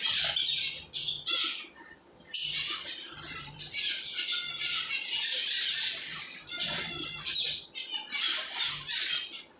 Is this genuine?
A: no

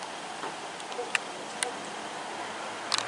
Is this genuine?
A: yes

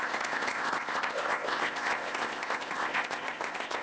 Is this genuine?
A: no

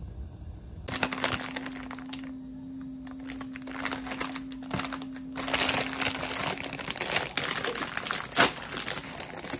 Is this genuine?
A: yes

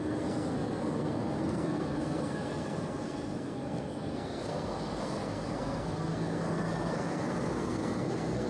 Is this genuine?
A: no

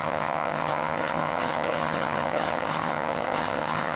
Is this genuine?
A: no